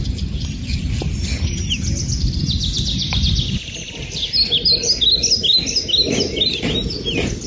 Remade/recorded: recorded